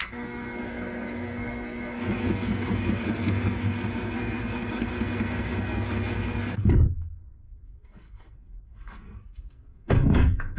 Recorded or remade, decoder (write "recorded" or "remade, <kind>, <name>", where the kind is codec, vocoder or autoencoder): remade, codec, SNAC